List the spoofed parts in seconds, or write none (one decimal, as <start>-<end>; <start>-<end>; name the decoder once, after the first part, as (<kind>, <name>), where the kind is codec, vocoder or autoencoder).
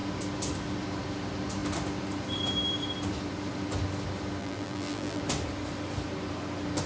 4.4-5.2 (vocoder, BigVGAN v2)